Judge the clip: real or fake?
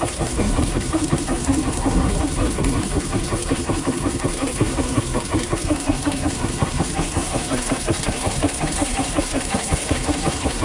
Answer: fake